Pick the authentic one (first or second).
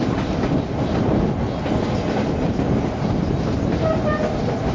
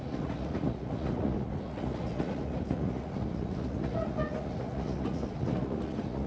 first